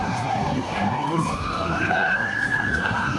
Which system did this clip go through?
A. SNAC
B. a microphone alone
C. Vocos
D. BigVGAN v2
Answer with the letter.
A